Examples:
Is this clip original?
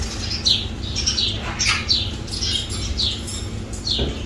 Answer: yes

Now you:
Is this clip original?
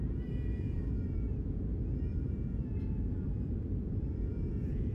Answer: no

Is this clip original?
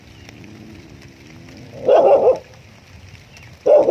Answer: yes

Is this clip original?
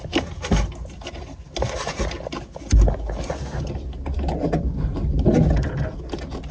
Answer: yes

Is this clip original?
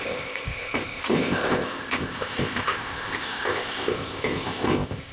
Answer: no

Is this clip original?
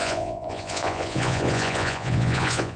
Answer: no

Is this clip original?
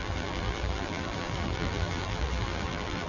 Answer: no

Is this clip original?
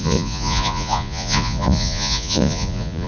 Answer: no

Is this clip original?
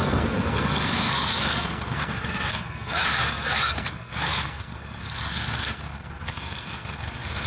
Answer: no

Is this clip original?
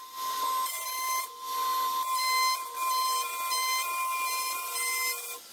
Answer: yes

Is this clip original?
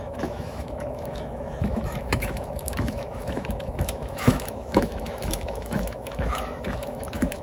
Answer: no